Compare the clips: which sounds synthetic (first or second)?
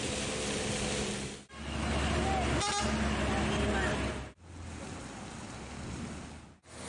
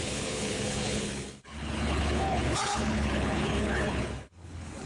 second